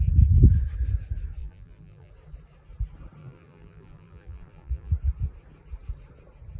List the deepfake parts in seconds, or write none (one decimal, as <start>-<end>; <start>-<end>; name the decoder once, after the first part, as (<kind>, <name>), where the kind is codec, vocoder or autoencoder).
1.4-2.1 (vocoder, BigVGAN v2); 3.2-4.9